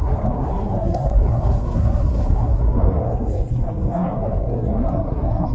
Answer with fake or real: fake